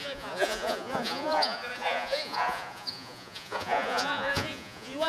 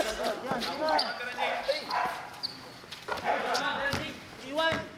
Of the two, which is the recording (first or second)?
second